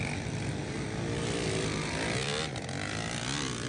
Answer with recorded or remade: recorded